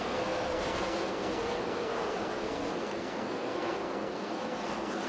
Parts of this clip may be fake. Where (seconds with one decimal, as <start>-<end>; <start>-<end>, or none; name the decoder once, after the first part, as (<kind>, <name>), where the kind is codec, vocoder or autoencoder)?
0.0-5.1 (codec, SNAC)